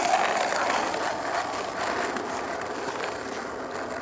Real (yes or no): yes